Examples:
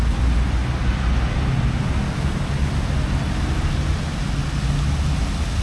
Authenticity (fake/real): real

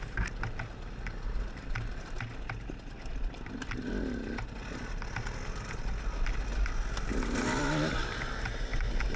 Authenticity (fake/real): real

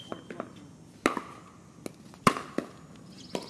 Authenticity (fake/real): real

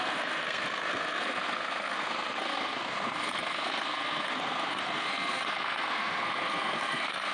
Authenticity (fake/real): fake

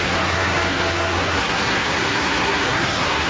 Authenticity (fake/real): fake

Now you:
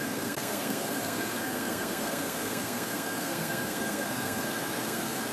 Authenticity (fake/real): fake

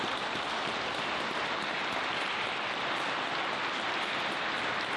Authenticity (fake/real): real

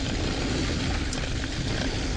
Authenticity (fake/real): real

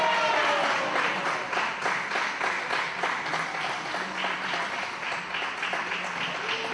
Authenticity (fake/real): real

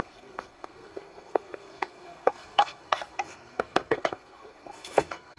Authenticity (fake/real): fake